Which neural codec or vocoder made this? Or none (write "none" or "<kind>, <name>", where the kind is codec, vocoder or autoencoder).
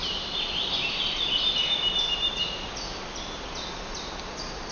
none